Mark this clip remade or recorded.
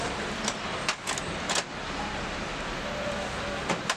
recorded